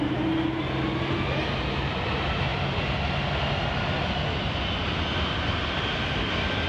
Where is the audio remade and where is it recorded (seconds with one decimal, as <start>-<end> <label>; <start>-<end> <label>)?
0.0-6.7 recorded